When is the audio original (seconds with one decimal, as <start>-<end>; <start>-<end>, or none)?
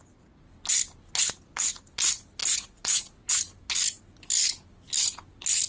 0.0-5.7